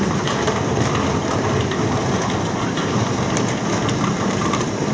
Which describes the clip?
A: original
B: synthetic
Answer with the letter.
B